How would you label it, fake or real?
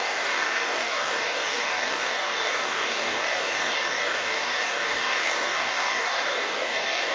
fake